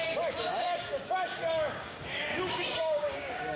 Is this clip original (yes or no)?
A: no